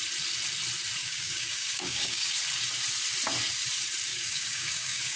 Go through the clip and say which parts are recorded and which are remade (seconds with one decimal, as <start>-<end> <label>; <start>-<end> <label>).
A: 0.0-1.0 recorded; 1.0-2.4 remade; 2.4-4.1 recorded; 4.1-5.2 remade